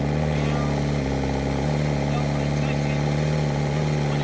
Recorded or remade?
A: recorded